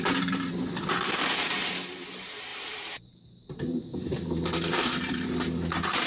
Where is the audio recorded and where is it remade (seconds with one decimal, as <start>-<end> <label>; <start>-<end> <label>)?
0.0-6.1 remade